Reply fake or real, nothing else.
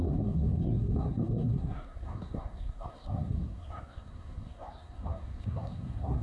fake